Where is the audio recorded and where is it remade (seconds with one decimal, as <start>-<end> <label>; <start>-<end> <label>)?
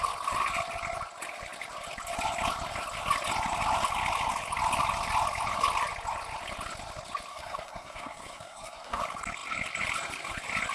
0.0-7.3 recorded; 7.3-9.0 remade; 9.0-10.7 recorded